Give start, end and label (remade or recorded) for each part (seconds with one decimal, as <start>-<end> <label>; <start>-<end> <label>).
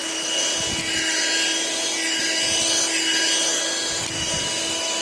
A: 0.0-5.0 recorded